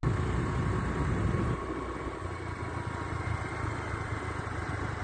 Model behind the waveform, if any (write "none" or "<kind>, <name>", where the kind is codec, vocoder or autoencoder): none